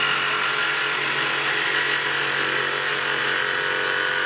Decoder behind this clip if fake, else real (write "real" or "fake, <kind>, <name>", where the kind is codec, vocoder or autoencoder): real